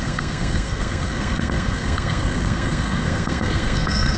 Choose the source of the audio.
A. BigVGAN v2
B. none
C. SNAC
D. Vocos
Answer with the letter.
C